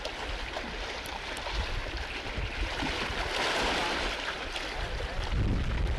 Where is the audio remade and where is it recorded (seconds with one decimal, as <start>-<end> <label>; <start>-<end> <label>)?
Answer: 0.0-1.8 recorded; 1.8-5.4 remade; 5.4-6.0 recorded